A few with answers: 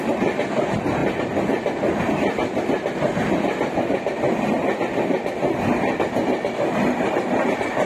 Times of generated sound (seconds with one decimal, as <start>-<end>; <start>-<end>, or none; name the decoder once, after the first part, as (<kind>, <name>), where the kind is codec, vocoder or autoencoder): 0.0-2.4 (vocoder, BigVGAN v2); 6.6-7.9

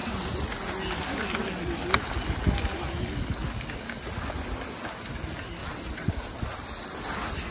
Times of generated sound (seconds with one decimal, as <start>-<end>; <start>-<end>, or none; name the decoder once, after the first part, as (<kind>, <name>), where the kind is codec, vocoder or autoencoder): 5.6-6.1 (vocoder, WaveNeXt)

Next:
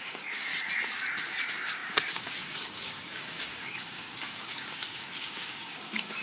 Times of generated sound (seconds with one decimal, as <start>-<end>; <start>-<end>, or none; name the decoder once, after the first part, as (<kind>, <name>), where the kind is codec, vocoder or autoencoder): 0.0-0.5 (codec, DAC); 1.4-6.2